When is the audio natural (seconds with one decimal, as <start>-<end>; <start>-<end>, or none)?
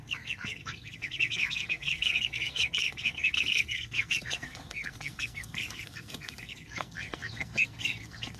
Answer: none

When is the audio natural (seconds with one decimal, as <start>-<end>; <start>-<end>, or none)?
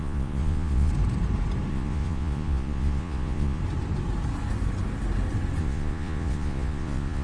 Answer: 0.9-1.7; 3.6-5.6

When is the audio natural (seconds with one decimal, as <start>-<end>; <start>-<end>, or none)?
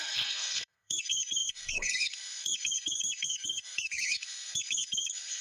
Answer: none